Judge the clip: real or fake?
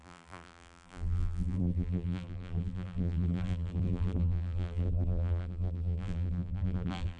fake